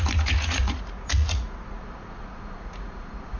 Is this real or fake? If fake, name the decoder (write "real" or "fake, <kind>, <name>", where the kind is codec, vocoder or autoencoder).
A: fake, vocoder, Vocos